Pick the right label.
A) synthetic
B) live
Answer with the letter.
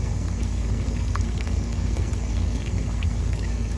A